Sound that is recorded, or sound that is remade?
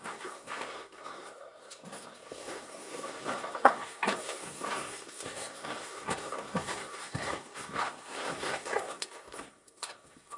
remade